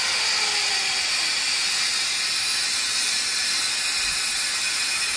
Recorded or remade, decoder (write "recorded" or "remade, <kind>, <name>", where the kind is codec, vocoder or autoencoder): recorded